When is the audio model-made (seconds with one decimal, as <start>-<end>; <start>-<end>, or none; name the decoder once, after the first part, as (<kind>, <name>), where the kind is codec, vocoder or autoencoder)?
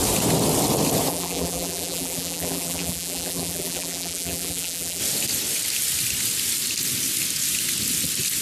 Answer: 1.1-5.0 (vocoder, BigVGAN v2)